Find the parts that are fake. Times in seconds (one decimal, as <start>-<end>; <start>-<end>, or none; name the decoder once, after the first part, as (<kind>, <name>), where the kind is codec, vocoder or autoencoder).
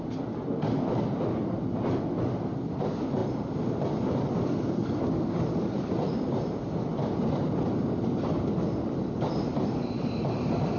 none